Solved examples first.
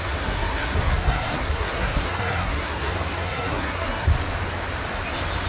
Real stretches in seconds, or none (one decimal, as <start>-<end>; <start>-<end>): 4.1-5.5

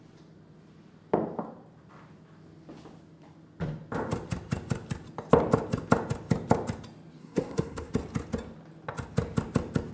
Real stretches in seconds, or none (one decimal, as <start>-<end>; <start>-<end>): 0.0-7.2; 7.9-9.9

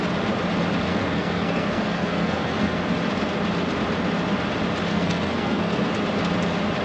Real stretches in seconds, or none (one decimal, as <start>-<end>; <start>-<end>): 0.0-0.9; 2.9-4.9; 5.9-6.8

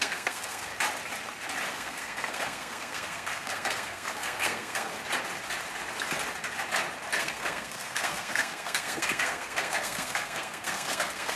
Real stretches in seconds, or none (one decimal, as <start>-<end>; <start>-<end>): 0.7-1.7; 4.9-7.2

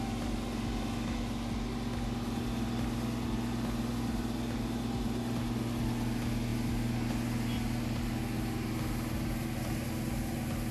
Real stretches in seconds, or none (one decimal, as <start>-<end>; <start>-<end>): 0.0-10.7

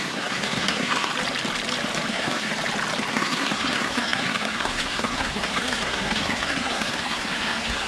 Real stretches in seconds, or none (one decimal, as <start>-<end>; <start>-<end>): 1.1-2.1; 2.5-3.1

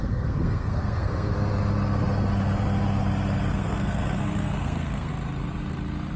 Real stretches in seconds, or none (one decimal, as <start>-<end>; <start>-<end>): 1.3-3.5; 5.1-6.2